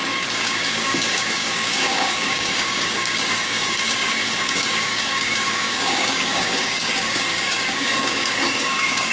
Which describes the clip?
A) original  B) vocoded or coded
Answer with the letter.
B